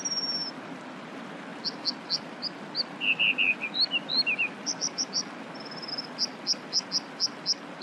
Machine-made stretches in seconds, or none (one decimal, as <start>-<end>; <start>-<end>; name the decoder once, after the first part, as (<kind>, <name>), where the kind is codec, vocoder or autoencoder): none